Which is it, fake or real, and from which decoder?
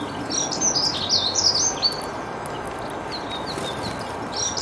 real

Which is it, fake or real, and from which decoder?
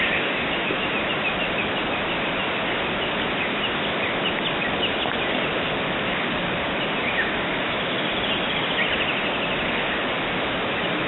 real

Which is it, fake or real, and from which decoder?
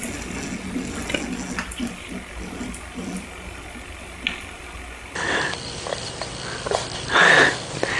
real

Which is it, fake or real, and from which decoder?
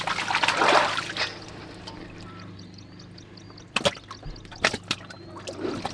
real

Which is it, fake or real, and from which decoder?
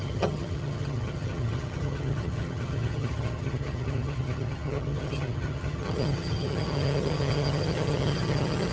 fake, vocoder, HiFi-GAN